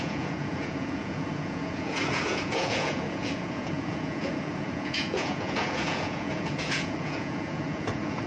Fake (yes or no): yes